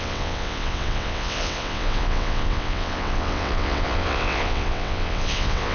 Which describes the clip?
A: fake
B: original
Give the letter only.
A